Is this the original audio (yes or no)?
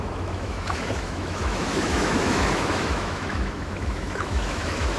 no